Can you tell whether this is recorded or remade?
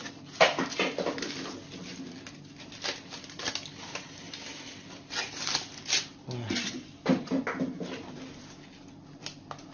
recorded